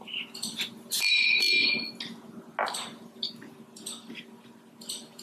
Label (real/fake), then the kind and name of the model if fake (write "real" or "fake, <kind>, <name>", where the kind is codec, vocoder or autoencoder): real